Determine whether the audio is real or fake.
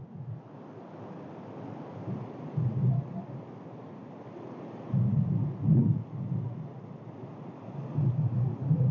real